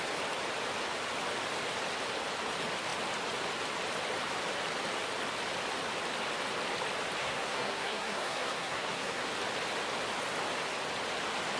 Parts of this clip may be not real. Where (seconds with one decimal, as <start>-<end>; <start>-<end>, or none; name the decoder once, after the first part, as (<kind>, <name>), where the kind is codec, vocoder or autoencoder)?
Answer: 7.2-9.3 (codec, SNAC)